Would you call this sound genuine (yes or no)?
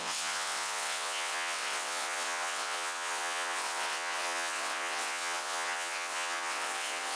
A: no